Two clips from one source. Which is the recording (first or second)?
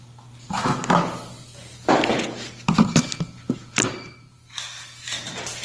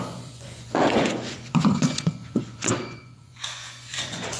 first